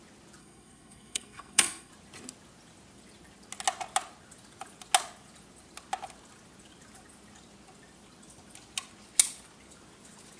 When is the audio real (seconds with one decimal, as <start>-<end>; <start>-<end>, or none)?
0.0-0.4; 1.9-10.4